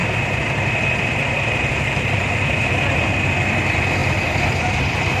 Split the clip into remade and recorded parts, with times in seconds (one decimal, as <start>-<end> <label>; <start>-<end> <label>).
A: 0.0-3.1 remade; 3.1-4.0 recorded; 4.0-4.8 remade; 4.8-5.2 recorded